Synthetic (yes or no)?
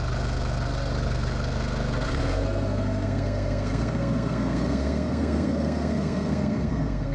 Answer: yes